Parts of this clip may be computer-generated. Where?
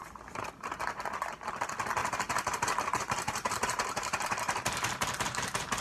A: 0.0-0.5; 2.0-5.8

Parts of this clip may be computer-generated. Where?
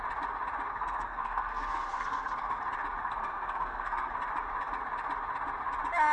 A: 0.7-2.6; 3.0-4.1